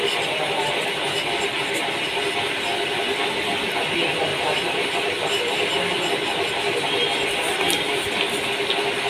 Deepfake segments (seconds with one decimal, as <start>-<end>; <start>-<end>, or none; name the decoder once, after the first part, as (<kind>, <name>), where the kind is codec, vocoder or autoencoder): 4.3-5.7 (vocoder, BigVGAN v2)

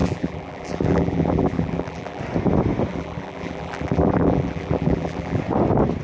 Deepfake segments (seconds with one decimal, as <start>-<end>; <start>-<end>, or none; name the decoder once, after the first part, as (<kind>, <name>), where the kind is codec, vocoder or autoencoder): 0.0-2.2 (vocoder, BigVGAN v2); 2.9-5.4

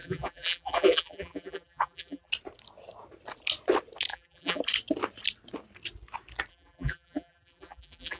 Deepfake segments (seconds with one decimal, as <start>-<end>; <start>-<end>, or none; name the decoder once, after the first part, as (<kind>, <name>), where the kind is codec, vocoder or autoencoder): 0.0-2.3 (vocoder, BigVGAN v2); 4.1-4.6; 6.5-8.2

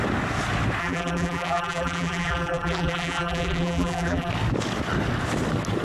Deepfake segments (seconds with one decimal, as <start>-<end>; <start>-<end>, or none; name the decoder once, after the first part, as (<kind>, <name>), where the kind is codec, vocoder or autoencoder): 0.8-4.3 (vocoder, BigVGAN v2)